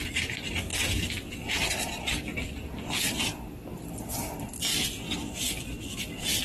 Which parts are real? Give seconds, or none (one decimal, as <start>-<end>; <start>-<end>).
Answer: 0.0-6.4